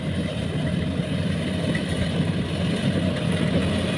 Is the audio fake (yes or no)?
no